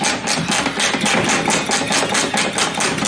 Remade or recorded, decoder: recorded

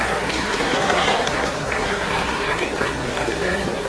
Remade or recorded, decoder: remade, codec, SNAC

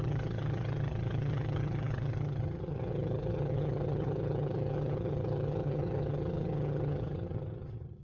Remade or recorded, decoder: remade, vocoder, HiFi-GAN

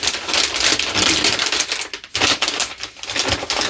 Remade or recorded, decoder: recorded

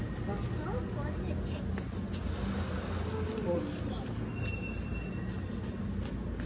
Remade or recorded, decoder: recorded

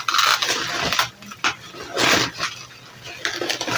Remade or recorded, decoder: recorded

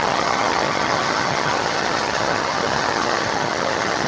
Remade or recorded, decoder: remade, vocoder, HiFi-GAN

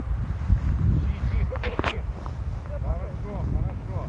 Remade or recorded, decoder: remade, vocoder, BigVGAN v2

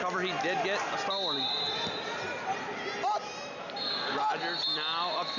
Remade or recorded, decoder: recorded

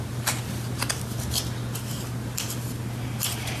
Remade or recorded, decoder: recorded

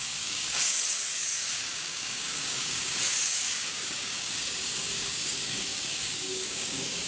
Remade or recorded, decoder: remade, codec, DAC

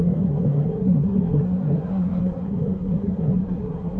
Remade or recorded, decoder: remade, codec, SNAC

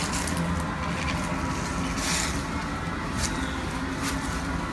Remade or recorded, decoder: recorded